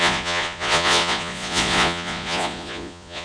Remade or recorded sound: remade